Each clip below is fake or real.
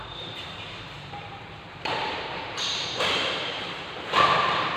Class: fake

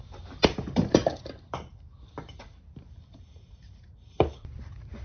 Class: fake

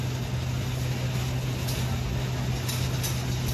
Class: real